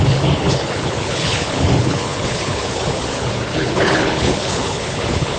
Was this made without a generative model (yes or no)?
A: no